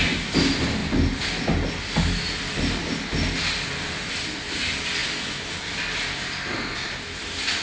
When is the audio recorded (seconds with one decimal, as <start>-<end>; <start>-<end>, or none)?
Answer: 0.0-7.6